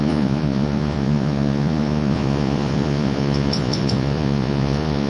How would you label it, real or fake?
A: fake